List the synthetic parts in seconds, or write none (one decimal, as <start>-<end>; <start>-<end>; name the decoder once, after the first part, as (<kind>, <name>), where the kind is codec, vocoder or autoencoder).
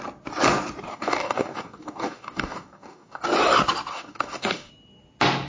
0.9-3.2 (codec, DAC); 3.9-4.7